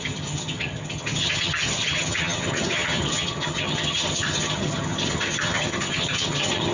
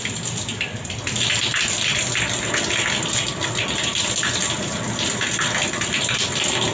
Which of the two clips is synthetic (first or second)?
first